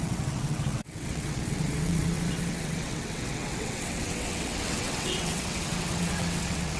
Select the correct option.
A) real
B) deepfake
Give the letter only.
B